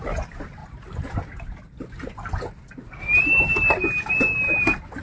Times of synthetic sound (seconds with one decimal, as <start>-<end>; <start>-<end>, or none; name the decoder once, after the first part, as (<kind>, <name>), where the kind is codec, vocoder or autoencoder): none